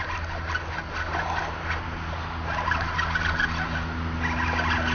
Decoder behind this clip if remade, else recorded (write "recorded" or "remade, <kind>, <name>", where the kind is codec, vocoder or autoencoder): recorded